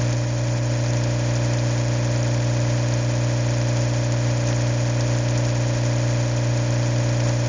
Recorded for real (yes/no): yes